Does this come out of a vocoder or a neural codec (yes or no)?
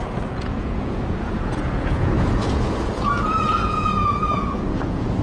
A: yes